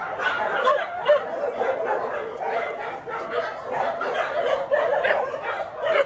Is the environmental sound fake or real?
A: real